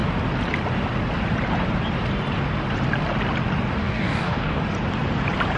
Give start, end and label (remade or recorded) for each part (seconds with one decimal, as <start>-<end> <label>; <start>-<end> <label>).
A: 0.0-3.8 recorded; 3.8-4.6 remade; 4.6-5.6 recorded